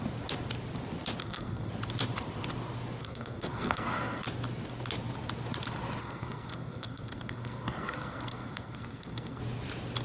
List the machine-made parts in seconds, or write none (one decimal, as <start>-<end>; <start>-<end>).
1.2-1.7; 3.0-4.2; 6.0-9.4

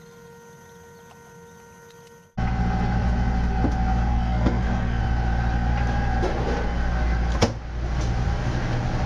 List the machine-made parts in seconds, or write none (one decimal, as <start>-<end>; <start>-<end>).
4.1-5.0

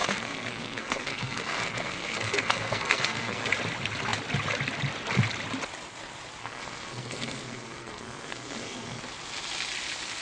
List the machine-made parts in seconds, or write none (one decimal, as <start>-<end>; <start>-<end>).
0.0-3.5; 6.4-9.0

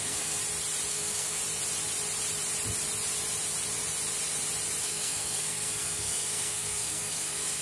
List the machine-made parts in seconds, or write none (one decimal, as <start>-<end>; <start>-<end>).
0.0-0.4; 0.9-1.4; 4.8-7.6

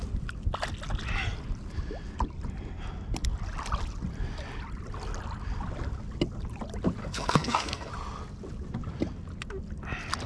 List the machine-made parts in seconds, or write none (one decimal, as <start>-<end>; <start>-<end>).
7.0-7.9

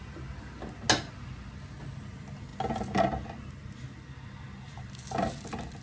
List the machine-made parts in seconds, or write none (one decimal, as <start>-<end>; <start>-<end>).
none

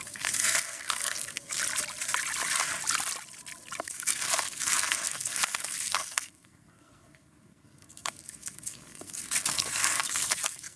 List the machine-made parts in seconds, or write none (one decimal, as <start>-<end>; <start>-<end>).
0.0-1.6; 3.8-10.8